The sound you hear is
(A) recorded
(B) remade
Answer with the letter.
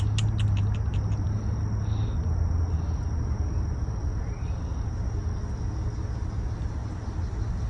A